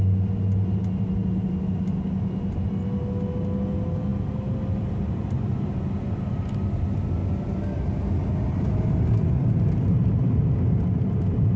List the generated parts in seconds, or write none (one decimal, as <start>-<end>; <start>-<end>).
7.2-10.1